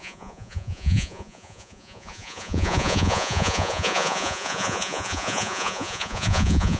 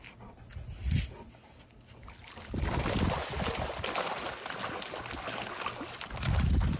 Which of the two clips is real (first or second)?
second